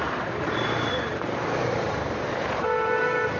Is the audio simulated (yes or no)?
yes